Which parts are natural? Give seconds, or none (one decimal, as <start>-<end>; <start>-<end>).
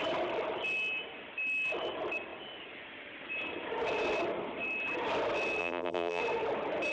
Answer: 0.0-5.6; 6.2-6.9